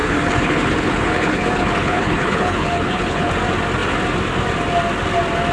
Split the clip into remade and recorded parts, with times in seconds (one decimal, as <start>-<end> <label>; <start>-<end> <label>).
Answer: 0.0-3.3 remade; 3.3-5.5 recorded